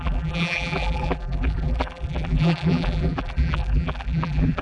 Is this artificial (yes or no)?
yes